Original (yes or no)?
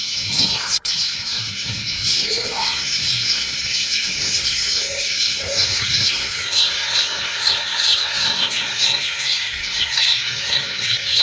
no